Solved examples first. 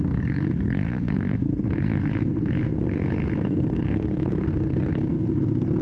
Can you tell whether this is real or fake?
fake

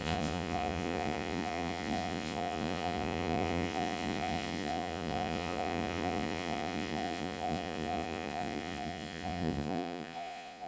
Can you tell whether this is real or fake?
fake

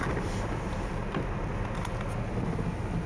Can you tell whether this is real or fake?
real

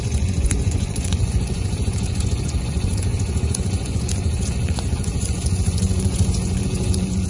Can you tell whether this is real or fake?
fake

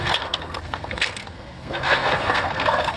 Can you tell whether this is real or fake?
fake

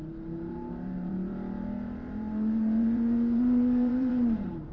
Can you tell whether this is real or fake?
fake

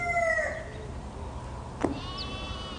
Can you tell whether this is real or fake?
real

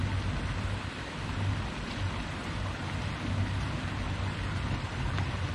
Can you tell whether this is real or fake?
real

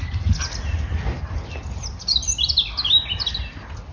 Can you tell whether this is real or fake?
real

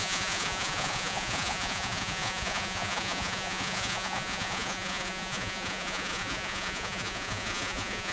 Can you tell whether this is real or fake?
fake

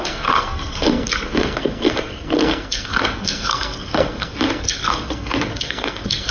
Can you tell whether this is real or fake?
fake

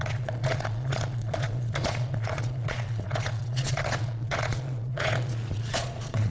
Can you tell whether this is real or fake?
fake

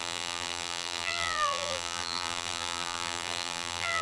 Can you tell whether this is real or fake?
fake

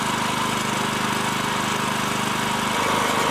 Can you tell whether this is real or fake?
real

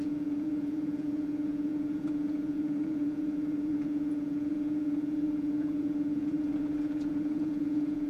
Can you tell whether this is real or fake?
fake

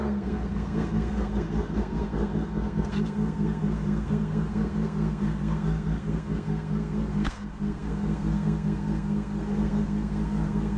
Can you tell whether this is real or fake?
fake